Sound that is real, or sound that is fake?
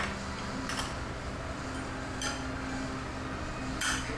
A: real